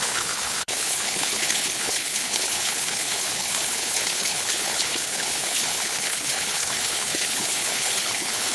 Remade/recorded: remade